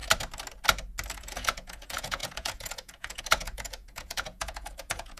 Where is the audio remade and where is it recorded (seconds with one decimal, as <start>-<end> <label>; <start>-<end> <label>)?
0.0-1.1 recorded; 1.1-5.2 remade